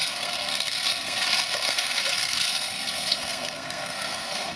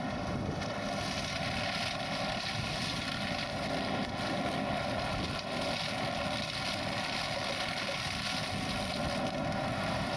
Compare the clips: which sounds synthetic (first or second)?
first